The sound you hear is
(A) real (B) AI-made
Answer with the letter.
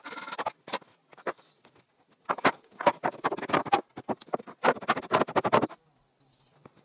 A